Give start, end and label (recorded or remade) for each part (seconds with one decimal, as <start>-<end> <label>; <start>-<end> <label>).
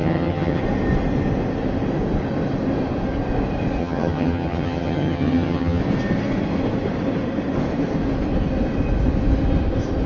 0.0-0.6 remade; 0.6-3.8 recorded; 3.8-5.8 remade; 5.8-10.1 recorded